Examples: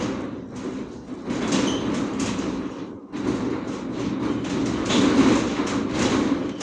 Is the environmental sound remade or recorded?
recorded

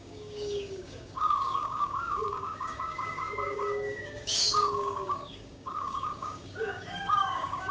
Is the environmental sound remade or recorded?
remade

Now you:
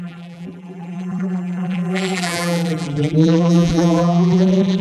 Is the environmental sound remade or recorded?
remade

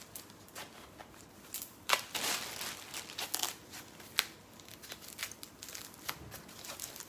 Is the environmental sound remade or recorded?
recorded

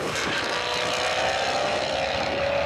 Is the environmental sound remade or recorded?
recorded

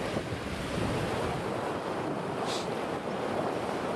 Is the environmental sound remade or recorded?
recorded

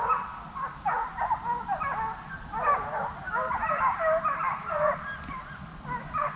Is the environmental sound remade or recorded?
recorded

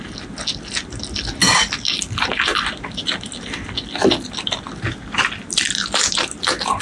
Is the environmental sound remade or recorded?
recorded